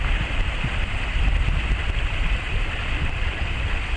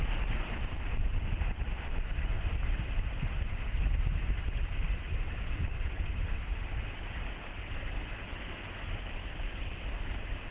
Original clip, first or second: second